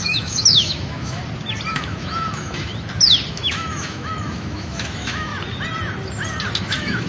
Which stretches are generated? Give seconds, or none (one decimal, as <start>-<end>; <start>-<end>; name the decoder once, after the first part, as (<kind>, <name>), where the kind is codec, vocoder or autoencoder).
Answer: 0.0-1.2 (autoencoder, DAC-VAE); 1.7-2.7; 3.3-5.3; 6.6-7.1